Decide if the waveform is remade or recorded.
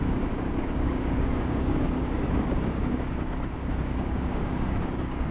remade